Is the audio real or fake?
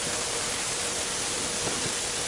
real